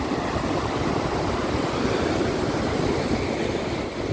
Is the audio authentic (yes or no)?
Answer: yes